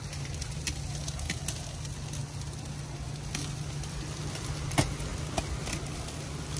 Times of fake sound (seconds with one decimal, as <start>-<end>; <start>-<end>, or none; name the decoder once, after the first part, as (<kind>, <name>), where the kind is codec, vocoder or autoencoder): 5.1-5.7 (vocoder, BigVGAN v2)